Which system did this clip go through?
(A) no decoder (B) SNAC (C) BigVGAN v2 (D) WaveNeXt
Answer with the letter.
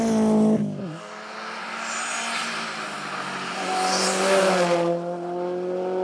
A